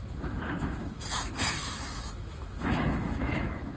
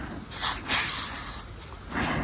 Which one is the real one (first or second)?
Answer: second